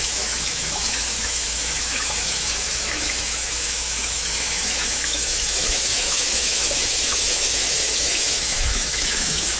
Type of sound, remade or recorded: remade